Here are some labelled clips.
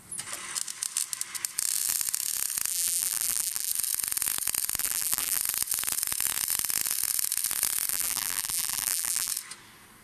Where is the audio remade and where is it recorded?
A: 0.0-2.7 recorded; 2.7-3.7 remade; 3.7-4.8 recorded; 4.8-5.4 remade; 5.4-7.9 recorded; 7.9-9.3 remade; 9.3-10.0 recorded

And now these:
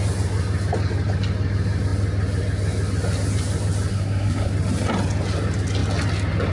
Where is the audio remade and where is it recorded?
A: 0.0-3.9 recorded; 3.9-4.5 remade; 4.5-6.5 recorded